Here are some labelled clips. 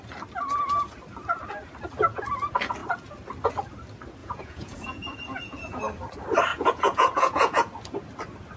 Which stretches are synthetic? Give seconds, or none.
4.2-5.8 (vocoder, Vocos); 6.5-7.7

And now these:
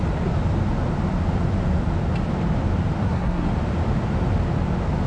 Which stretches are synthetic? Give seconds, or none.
3.0-3.5 (codec, SNAC)

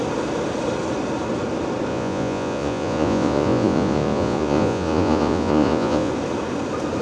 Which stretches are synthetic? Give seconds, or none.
1.9-6.1 (vocoder, Vocos)

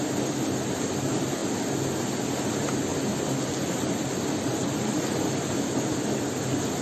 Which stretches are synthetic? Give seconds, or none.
none

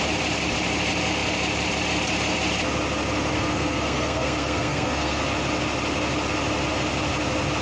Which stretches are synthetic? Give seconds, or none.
3.3-5.2 (codec, SNAC)

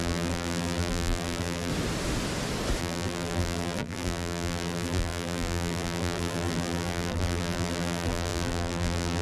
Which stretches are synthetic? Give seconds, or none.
0.0-1.7 (vocoder, BigVGAN v2); 2.8-9.2